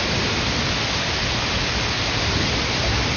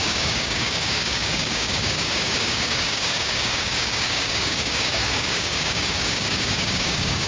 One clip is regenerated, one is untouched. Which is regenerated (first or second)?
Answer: second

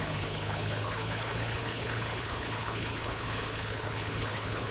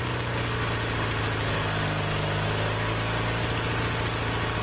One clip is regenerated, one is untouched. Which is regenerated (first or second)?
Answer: first